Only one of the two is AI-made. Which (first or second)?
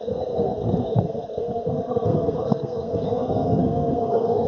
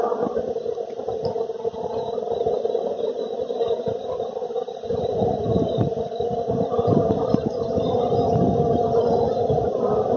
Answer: first